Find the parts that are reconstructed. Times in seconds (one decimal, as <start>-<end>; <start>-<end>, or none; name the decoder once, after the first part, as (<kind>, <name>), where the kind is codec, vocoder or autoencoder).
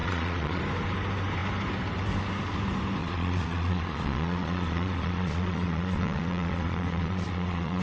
0.0-0.6 (vocoder, Vocos); 3.0-7.8